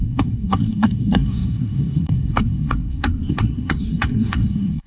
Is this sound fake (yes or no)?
yes